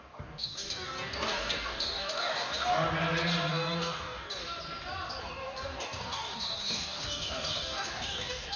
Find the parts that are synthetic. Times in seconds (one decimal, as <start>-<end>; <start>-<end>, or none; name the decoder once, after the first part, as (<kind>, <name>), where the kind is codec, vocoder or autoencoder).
0.0-2.7 (codec, DAC); 3.5-4.4; 5.2-8.6